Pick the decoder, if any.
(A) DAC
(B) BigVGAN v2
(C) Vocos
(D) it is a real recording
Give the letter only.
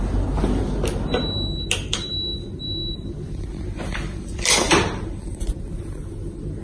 D